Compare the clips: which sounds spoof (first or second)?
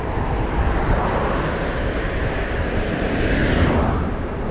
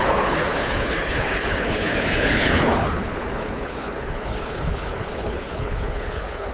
second